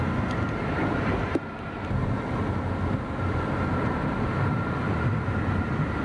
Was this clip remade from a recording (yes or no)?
no